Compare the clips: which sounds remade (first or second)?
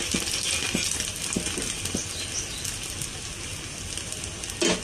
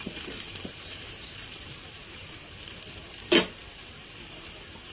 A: second